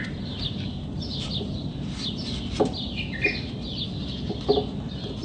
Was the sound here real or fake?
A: real